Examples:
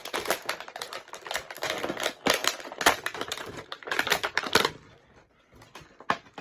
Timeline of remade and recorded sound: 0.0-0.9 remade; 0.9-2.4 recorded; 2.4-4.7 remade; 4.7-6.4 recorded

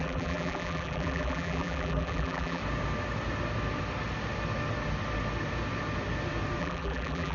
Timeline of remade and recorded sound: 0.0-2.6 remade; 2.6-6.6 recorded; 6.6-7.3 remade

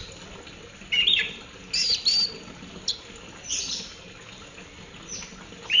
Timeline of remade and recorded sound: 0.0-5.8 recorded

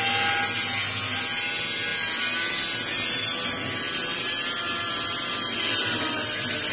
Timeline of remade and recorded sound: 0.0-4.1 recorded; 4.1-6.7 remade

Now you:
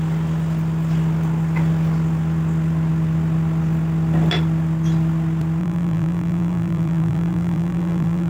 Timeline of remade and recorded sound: 0.0-5.6 recorded; 5.6-8.3 remade